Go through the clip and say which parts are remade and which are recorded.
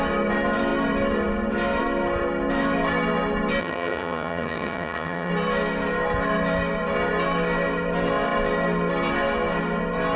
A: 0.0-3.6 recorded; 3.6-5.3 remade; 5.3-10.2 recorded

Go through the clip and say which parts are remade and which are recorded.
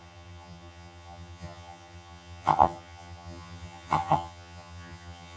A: 0.0-5.4 remade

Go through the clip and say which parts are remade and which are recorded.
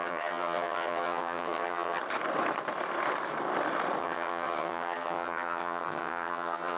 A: 0.0-2.0 remade; 2.0-4.0 recorded; 4.0-6.8 remade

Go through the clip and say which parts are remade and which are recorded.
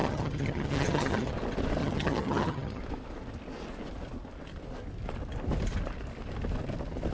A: 0.0-1.3 remade; 1.3-1.8 recorded; 1.8-2.8 remade; 2.8-7.1 recorded